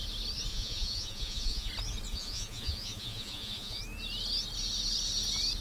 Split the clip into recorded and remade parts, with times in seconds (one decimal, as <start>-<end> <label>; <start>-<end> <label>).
0.0-0.5 recorded; 0.5-1.7 remade; 1.7-2.1 recorded; 2.1-3.8 remade; 3.8-5.6 recorded